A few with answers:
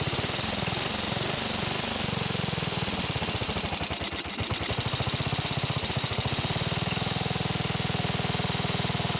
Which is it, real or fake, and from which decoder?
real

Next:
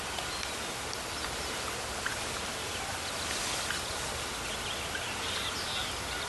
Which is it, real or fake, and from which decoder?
real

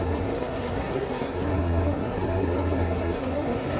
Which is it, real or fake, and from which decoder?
fake, codec, SNAC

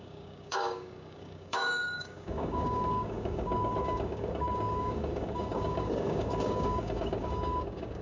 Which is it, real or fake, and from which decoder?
fake, codec, DAC